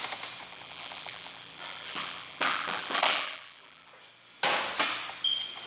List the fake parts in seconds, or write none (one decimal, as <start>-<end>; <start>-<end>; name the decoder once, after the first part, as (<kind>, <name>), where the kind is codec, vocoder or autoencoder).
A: 0.5-3.9 (vocoder, BigVGAN v2)